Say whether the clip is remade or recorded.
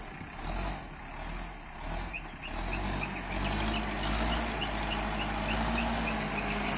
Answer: recorded